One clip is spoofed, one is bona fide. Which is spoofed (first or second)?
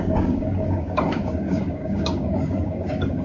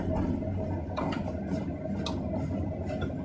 first